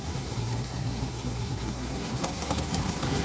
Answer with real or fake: fake